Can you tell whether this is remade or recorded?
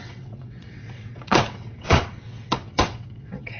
remade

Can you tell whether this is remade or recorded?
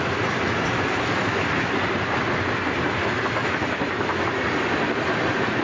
recorded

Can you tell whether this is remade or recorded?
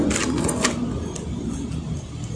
recorded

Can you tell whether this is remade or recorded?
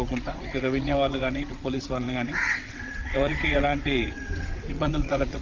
remade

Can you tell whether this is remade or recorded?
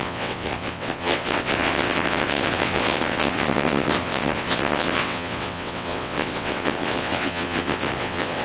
remade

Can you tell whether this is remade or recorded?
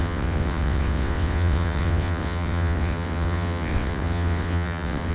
remade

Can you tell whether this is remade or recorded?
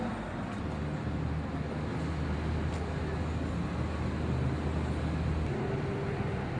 recorded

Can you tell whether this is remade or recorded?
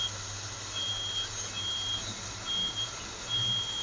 recorded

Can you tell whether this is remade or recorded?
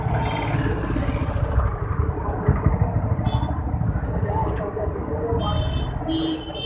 recorded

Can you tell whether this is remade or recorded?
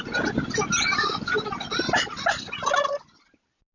recorded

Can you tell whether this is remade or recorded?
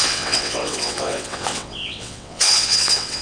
remade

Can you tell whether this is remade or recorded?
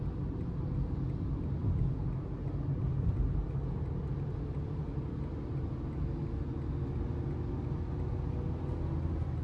recorded